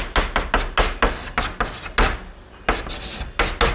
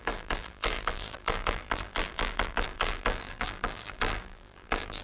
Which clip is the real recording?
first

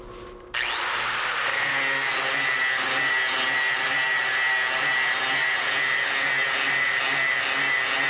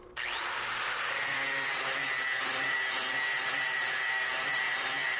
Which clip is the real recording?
first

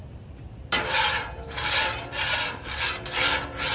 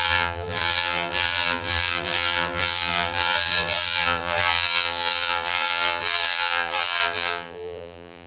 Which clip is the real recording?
first